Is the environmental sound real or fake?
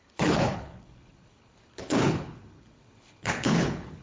fake